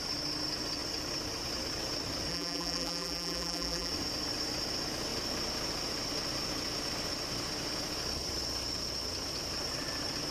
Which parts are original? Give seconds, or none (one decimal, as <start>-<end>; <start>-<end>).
0.0-2.3; 3.9-10.3